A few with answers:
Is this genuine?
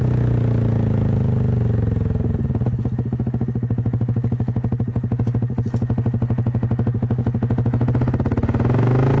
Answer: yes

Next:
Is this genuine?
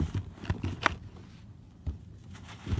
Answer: yes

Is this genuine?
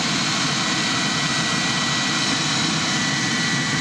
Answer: yes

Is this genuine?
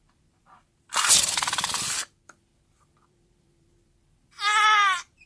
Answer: no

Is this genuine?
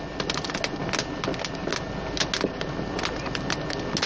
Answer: yes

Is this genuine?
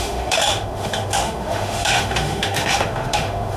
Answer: no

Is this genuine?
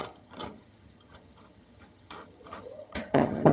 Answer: no